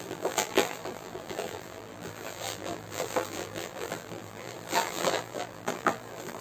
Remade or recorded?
remade